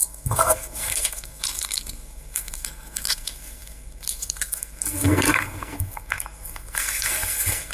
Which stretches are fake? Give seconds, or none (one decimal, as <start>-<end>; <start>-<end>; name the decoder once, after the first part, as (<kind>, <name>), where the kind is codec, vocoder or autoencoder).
0.0-7.7 (codec, SNAC)